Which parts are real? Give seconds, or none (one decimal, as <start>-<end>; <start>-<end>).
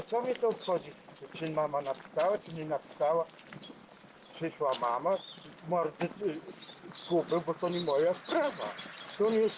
0.0-9.6